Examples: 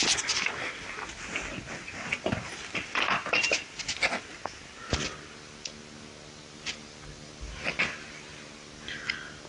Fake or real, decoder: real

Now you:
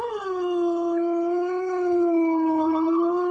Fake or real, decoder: fake, codec, HILCodec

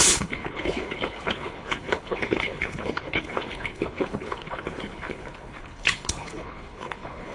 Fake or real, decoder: fake, codec, HILCodec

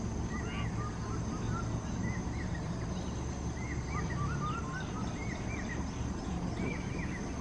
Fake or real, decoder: real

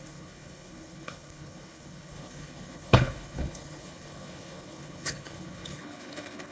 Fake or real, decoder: fake, codec, HILCodec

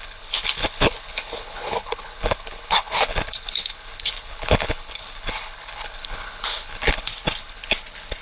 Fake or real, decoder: fake, codec, HILCodec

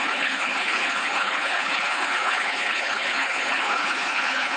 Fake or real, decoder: fake, codec, HILCodec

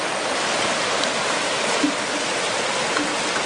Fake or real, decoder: real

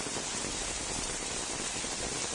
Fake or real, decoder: real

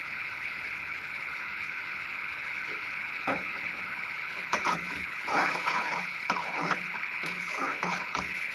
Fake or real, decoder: fake, codec, HILCodec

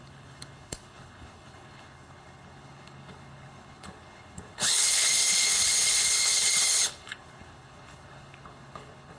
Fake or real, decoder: fake, codec, HILCodec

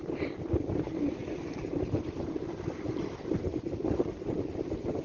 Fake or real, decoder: real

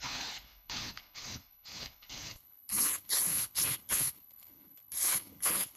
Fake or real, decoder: fake, codec, HILCodec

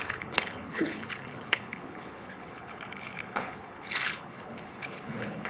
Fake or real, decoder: fake, codec, HILCodec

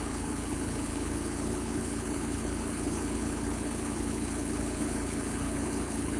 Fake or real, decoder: fake, codec, HILCodec